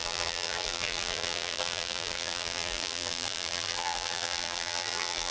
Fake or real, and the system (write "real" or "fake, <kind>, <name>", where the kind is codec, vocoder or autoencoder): fake, vocoder, BigVGAN v2